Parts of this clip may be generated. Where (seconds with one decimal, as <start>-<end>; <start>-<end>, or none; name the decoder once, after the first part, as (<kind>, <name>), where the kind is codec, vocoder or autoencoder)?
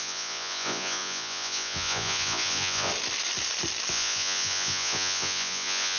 0.0-2.9 (vocoder, Vocos); 3.9-6.0